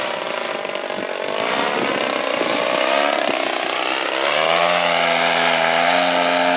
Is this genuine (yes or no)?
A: yes